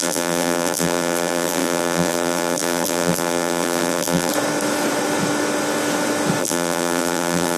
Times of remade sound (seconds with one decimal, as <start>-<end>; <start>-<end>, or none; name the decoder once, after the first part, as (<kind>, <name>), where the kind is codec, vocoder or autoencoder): 0.0-4.3 (vocoder, BigVGAN v2); 6.4-7.6